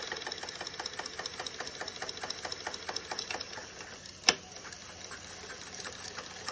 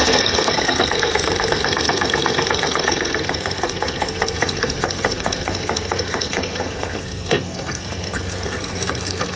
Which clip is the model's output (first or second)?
second